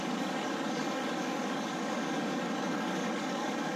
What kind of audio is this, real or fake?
fake